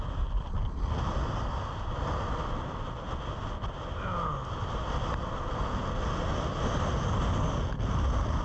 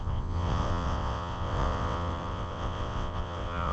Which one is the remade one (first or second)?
second